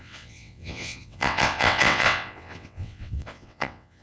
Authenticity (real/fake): fake